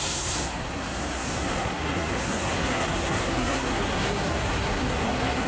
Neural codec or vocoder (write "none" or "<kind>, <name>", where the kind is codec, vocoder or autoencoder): codec, SNAC